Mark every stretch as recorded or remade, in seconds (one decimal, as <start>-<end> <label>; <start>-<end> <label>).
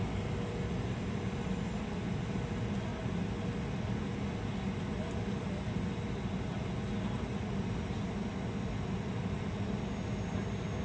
0.0-10.8 recorded